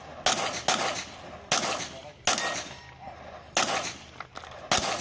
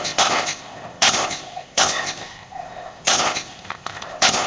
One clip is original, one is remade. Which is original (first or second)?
first